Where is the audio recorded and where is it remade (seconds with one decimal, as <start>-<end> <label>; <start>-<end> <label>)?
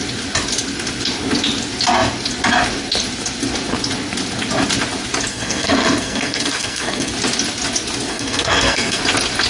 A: 0.0-5.3 recorded; 5.3-7.1 remade; 7.1-8.1 recorded; 8.1-9.0 remade; 9.0-9.5 recorded